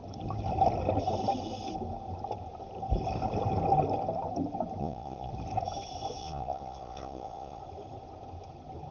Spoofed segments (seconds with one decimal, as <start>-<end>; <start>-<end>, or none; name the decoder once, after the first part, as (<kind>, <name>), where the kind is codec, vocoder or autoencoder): 4.8-5.3 (vocoder, Vocos); 6.2-7.6